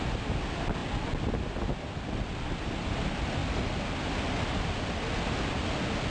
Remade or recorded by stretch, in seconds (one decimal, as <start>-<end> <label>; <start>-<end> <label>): 0.0-6.1 recorded